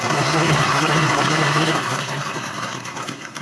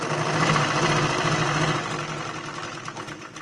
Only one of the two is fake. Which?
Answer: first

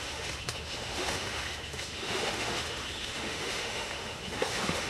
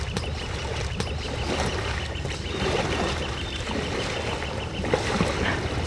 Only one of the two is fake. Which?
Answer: first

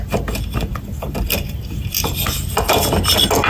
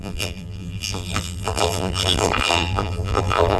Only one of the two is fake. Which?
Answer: second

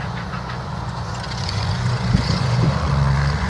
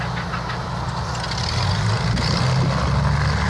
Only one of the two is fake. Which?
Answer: first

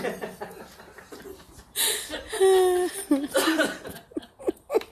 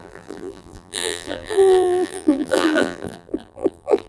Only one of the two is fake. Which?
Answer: second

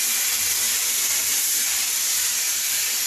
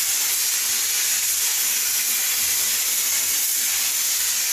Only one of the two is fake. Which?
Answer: first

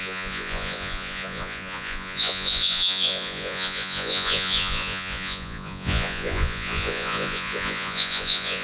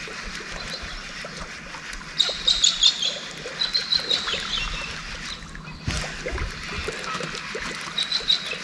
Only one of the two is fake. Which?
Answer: first